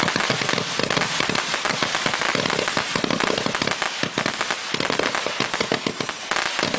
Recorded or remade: recorded